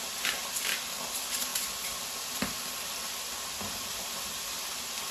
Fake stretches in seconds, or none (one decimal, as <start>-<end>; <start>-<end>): 1.5-4.6